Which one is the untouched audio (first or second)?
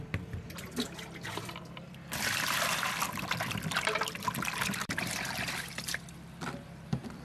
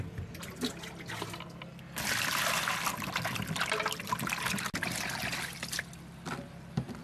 second